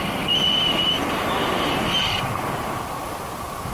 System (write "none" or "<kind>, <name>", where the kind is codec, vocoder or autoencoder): none